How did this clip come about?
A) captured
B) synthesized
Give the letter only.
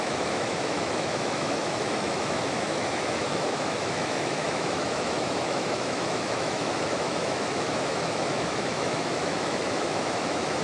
B